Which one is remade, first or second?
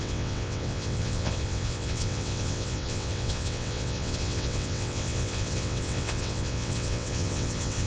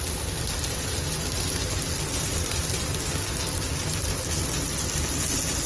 first